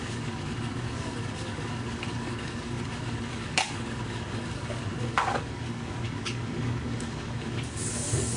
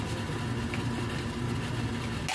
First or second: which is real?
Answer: second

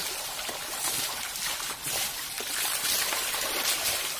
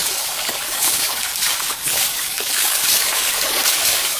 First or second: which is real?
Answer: first